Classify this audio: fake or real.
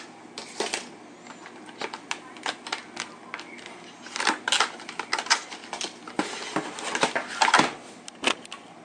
real